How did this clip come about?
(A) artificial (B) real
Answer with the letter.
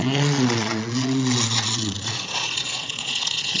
A